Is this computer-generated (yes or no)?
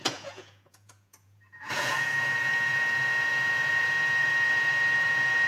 yes